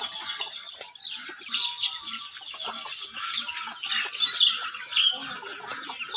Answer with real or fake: real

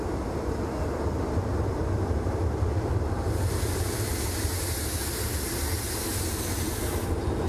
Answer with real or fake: real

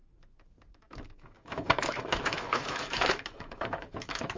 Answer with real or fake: fake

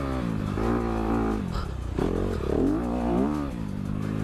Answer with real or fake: real